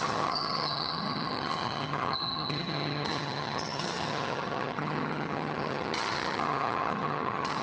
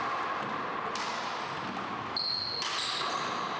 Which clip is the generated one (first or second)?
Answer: first